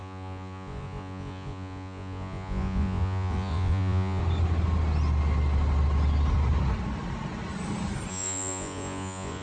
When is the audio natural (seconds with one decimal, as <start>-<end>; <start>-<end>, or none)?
4.2-8.1